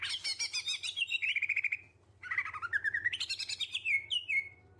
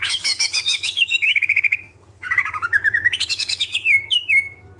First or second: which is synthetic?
second